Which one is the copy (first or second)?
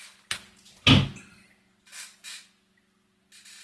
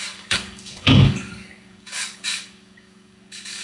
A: second